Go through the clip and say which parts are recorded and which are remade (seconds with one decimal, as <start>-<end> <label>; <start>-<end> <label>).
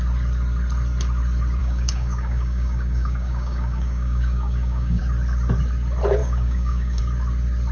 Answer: 0.0-1.6 recorded; 1.6-5.0 remade; 5.0-6.2 recorded; 6.2-7.0 remade; 7.0-7.7 recorded